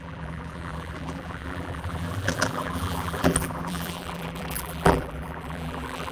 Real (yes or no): no